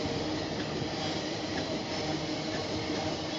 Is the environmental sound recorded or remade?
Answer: recorded